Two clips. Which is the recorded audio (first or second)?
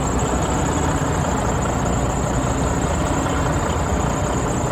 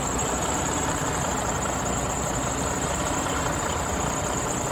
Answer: first